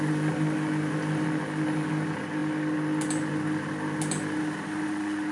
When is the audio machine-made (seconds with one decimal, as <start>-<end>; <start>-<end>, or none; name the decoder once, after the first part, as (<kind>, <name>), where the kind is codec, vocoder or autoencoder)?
none

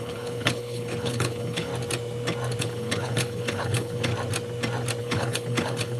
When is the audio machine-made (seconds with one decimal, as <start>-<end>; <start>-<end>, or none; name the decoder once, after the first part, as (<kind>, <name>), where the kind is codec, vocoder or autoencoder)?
0.0-1.7 (codec, HILCodec); 2.6-4.1; 5.0-6.0